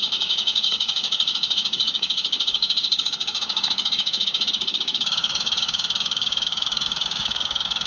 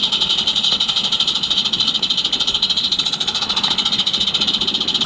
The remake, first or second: first